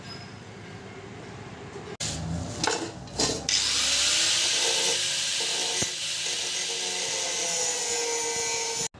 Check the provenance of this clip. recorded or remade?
recorded